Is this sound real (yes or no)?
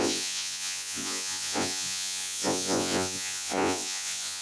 no